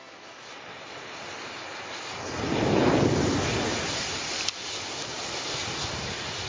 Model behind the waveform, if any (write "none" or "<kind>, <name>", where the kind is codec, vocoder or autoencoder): none